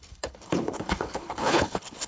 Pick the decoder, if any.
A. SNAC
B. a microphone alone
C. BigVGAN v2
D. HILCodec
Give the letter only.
D